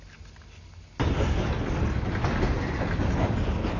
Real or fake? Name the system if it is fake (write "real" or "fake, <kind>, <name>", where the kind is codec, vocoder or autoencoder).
real